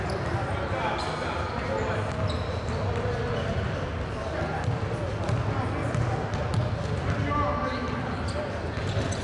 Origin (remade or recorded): recorded